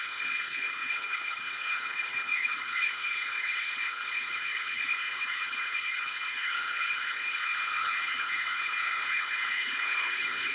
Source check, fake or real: fake